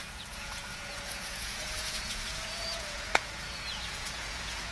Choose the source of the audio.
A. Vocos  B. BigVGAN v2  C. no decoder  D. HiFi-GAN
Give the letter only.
A